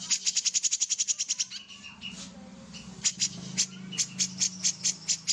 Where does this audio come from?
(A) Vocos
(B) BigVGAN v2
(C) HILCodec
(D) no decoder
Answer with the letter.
D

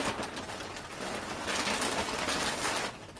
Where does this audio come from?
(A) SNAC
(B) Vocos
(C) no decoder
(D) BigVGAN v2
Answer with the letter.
C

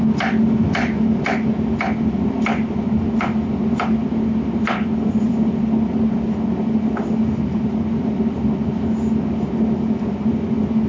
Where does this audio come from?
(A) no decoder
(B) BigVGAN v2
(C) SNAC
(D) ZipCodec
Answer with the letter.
A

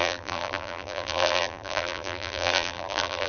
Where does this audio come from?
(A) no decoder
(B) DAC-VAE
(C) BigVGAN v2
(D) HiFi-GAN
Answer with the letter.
C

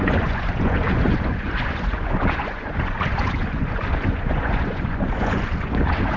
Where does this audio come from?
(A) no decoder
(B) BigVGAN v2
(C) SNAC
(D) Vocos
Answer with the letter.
D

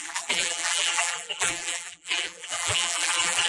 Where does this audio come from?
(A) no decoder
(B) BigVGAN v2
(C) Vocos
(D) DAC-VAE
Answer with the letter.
B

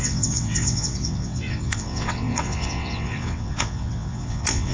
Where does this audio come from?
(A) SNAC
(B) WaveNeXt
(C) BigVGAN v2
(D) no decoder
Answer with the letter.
B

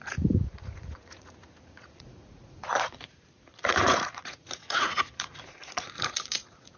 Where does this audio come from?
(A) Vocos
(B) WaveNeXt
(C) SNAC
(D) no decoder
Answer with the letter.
A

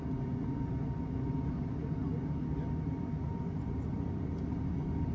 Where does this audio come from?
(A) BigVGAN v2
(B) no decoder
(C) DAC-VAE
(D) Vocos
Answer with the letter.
B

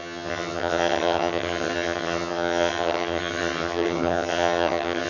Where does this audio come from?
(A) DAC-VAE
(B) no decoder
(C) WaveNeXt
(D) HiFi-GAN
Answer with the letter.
D